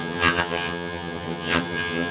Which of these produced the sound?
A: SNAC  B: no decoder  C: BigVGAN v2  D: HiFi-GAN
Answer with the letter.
D